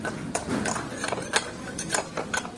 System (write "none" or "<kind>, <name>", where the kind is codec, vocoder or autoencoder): vocoder, BigVGAN v2